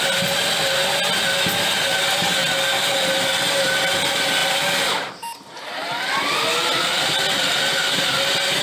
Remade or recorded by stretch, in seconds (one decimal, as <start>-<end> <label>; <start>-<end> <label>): 0.0-8.6 recorded